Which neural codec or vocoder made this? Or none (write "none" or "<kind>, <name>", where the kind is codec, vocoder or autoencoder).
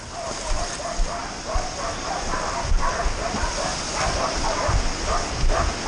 none